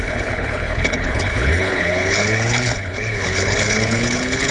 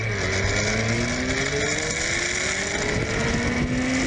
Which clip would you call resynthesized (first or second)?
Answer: first